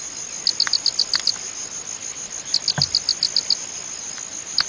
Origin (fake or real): real